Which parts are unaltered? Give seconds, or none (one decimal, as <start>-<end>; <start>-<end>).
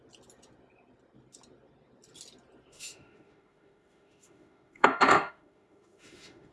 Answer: 0.0-2.7